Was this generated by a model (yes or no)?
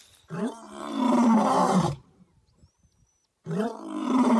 yes